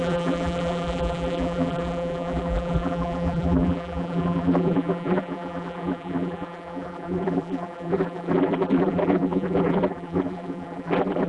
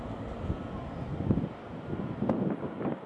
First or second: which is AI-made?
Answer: first